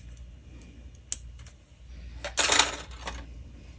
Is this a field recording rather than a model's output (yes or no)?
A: yes